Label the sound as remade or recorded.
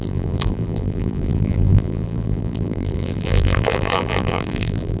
remade